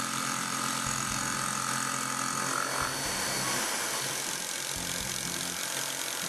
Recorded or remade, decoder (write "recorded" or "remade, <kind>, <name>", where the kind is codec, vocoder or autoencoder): recorded